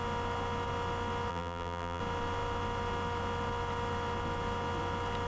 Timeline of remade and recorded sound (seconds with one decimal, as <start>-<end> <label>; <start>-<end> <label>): 0.0-1.3 recorded; 1.3-2.0 remade; 2.0-5.3 recorded